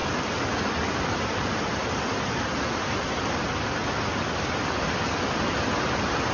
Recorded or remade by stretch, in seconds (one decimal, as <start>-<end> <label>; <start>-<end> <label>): 0.0-6.3 recorded